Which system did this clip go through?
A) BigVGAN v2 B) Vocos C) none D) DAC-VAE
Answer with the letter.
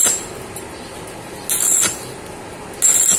C